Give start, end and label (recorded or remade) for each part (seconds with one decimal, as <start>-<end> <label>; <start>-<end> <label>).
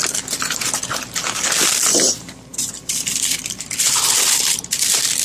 0.0-5.2 remade